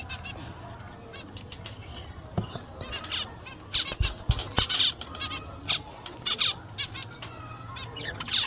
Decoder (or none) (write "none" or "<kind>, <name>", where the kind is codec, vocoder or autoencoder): none